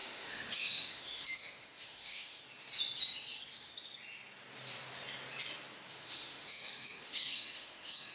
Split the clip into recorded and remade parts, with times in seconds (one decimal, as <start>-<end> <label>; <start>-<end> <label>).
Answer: 0.0-2.4 remade; 2.4-5.9 recorded; 5.9-8.1 remade